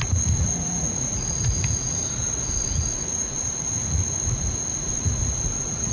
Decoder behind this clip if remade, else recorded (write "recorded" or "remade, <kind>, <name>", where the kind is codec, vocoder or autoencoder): remade, vocoder, Vocos